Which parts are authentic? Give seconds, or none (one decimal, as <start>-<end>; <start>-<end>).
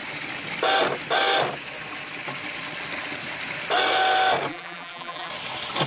0.0-4.5; 5.3-5.9